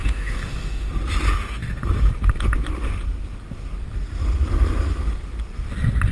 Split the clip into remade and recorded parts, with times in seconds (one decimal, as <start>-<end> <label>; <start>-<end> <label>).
0.0-0.9 remade; 0.9-6.1 recorded